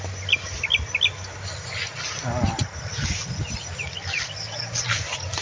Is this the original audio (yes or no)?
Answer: yes